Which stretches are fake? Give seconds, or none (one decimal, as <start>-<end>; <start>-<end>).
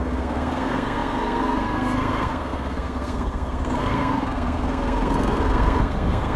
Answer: 0.0-6.4